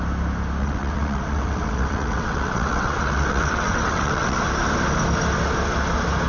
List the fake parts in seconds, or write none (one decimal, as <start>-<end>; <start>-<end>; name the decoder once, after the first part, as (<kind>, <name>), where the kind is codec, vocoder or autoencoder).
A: 0.6-4.4 (vocoder, WaveNeXt)